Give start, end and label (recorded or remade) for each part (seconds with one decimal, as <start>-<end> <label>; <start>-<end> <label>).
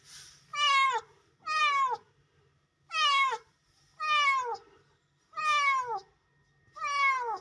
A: 0.0-7.4 recorded